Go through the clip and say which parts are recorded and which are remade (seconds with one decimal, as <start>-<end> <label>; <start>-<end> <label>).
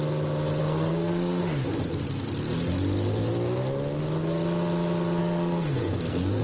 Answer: 0.0-0.6 recorded; 0.6-1.4 remade; 1.4-5.2 recorded; 5.2-6.4 remade